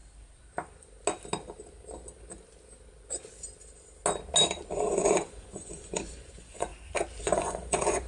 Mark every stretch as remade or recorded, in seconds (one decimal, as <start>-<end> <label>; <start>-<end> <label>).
0.0-4.7 recorded; 4.7-6.7 remade; 6.7-7.2 recorded; 7.2-8.1 remade